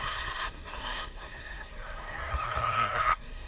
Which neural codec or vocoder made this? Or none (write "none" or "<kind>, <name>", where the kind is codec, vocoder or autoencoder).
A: codec, SNAC